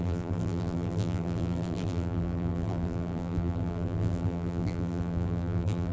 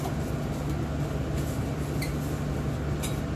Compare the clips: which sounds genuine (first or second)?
second